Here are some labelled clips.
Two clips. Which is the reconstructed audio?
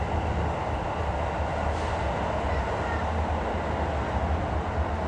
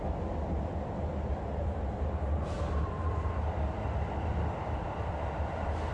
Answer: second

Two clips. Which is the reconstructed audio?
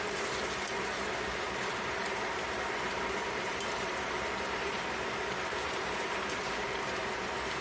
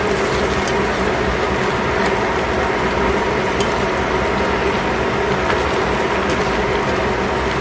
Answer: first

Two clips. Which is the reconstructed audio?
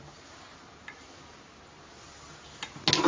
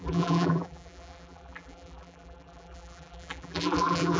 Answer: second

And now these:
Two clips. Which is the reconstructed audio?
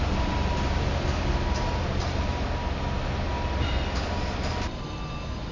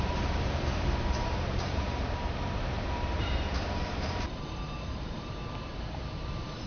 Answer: second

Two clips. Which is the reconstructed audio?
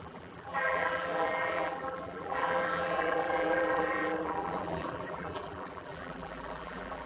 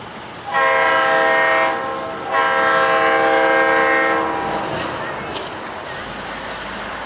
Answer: first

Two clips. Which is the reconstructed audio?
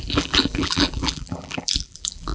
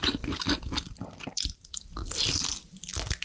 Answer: first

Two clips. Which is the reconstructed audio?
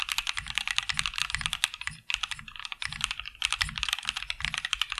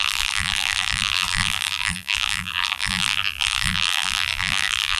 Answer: second